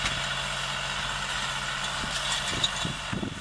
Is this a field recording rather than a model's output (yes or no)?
yes